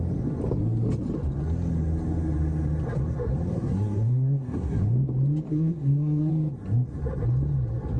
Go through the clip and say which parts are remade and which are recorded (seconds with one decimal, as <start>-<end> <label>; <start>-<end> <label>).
0.0-3.5 recorded; 3.5-4.8 remade; 4.8-5.5 recorded; 5.5-6.3 remade; 6.3-8.0 recorded